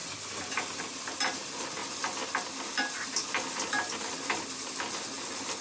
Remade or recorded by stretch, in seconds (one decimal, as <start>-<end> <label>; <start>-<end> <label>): 0.0-5.6 recorded